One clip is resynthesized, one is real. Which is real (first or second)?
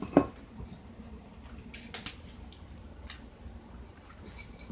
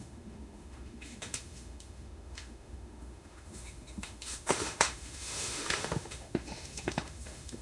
first